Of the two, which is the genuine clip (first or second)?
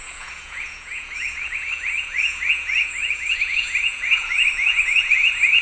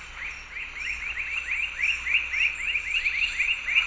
second